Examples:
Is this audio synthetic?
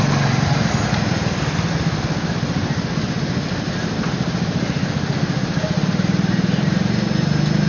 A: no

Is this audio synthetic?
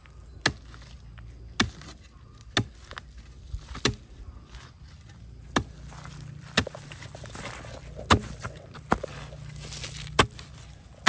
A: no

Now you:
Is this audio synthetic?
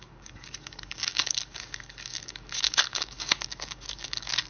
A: yes